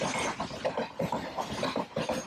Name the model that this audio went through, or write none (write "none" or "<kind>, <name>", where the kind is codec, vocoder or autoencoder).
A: none